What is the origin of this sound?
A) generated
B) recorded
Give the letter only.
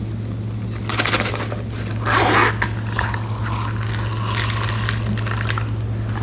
B